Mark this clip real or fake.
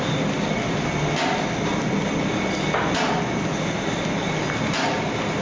real